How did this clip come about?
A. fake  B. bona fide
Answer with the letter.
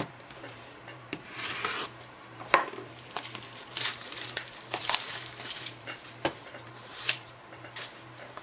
A